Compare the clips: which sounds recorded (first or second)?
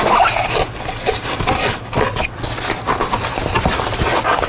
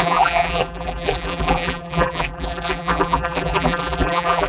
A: first